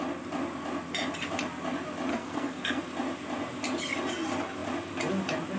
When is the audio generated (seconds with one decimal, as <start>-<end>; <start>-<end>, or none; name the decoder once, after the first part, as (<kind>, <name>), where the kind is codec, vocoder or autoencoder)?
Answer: 2.1-2.8 (codec, SNAC)